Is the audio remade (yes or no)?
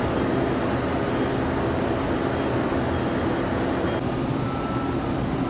no